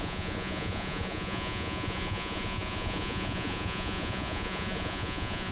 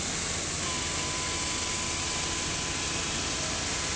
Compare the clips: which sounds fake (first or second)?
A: first